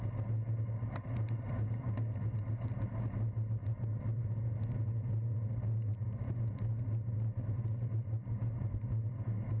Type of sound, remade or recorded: recorded